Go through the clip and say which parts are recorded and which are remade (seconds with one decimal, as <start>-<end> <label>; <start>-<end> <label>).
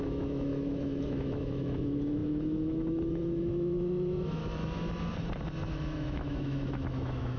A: 0.0-4.4 remade; 4.4-5.7 recorded; 5.7-7.4 remade